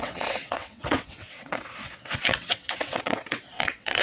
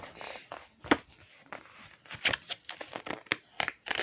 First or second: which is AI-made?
first